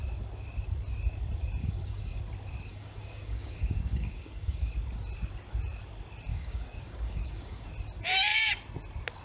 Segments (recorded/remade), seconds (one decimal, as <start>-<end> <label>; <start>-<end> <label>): 0.0-1.6 recorded; 1.6-2.2 remade; 2.2-2.7 recorded; 2.7-4.7 remade; 4.7-6.3 recorded; 6.3-7.7 remade; 7.7-9.2 recorded